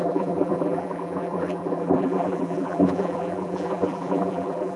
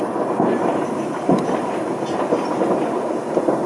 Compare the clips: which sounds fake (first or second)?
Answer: first